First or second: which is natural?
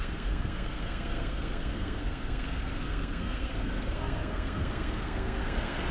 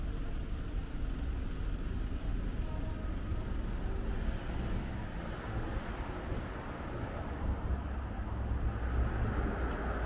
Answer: second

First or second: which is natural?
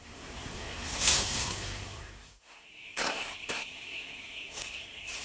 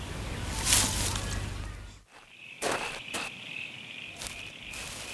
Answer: second